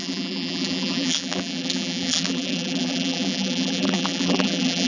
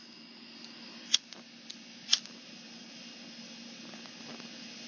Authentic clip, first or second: second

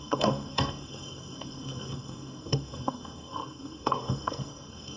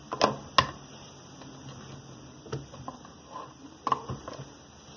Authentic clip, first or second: second